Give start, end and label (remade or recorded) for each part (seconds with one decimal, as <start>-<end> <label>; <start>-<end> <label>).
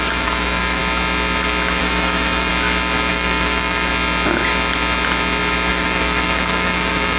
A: 0.0-0.8 remade; 0.8-1.8 recorded; 1.8-2.5 remade; 2.5-3.1 recorded; 3.1-3.9 remade; 3.9-5.7 recorded; 5.7-7.2 remade